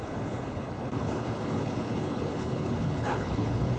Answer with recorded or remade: remade